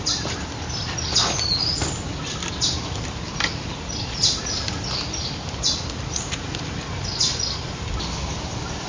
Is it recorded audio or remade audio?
recorded